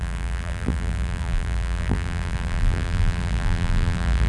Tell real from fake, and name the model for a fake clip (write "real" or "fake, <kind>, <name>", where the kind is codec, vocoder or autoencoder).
fake, vocoder, BigVGAN v2